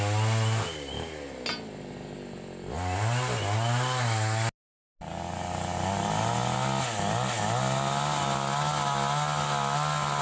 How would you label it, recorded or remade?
recorded